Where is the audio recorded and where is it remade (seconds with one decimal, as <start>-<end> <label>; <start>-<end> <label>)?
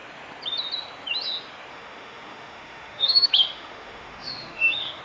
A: 0.0-1.7 recorded; 1.7-5.0 remade